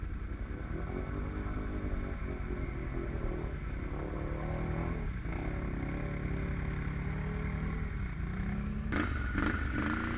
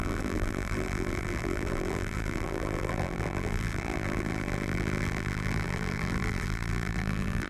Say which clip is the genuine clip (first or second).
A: first